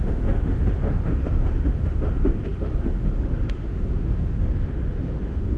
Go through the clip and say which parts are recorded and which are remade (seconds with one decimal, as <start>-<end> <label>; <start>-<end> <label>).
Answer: 0.0-5.6 remade